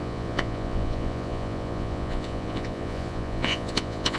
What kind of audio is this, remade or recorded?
remade